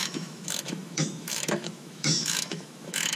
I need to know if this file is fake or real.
fake